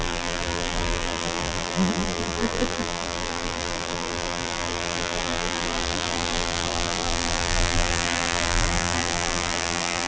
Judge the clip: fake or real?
fake